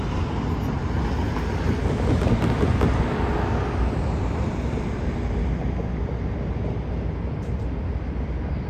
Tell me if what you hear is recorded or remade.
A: recorded